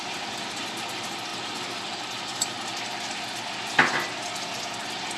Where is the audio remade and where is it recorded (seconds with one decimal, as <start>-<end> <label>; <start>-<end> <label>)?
0.0-5.2 recorded